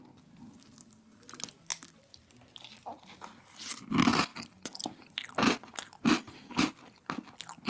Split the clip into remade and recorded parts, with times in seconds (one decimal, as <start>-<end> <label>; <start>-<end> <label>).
0.0-7.7 recorded